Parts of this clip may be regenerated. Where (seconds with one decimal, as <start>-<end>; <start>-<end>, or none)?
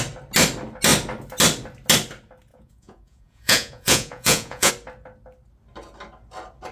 2.5-4.7